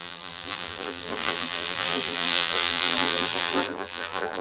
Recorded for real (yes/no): no